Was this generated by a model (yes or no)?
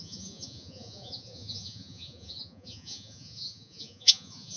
yes